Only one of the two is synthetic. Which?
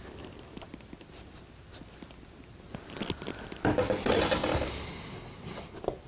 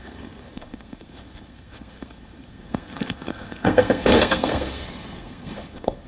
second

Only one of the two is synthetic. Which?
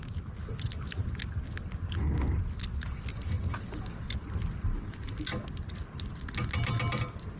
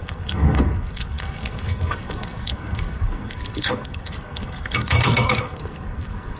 second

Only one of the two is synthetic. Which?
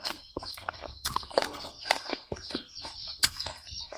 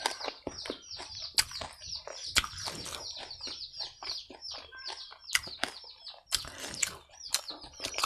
first